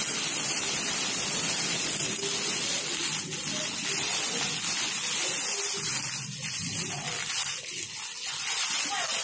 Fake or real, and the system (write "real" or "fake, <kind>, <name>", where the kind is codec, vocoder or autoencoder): real